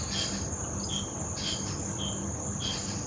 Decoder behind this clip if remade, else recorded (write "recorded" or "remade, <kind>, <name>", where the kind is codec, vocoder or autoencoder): recorded